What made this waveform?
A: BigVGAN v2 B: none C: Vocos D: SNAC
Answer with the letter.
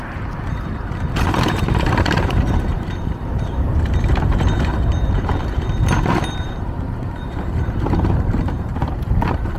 A